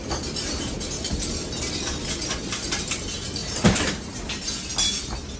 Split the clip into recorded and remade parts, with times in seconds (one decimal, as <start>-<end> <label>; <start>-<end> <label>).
0.0-3.4 recorded; 3.4-4.2 remade; 4.2-5.4 recorded